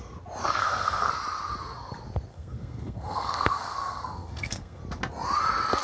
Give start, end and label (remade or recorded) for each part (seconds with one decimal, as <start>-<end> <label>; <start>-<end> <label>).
0.0-0.6 recorded; 0.6-1.1 remade; 1.1-2.3 recorded; 2.3-4.8 remade; 4.8-5.8 recorded